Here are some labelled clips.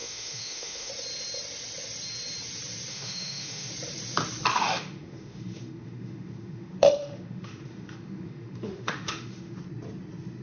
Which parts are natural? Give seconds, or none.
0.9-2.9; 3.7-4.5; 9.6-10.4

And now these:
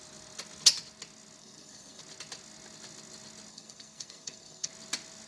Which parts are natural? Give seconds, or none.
0.0-1.4; 2.0-3.5; 4.7-5.3

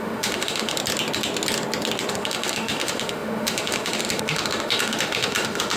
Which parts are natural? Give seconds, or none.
0.8-2.1